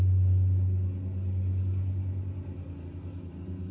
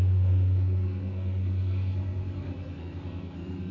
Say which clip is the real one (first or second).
first